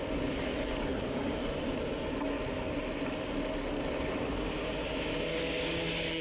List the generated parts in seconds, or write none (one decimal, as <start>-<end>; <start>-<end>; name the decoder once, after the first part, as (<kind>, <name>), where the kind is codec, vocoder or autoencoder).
5.3-6.2 (codec, DAC)